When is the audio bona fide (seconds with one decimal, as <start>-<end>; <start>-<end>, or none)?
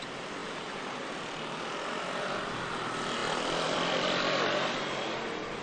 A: 0.0-0.4; 1.6-3.2; 5.1-5.6